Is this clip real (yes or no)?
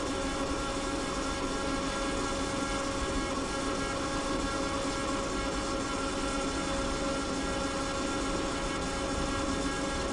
yes